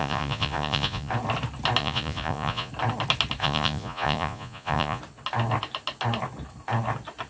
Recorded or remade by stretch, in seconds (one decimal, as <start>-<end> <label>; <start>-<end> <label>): 0.0-1.1 remade; 1.1-1.8 recorded; 1.8-2.7 remade; 2.7-3.4 recorded; 3.4-5.0 remade; 5.0-7.3 recorded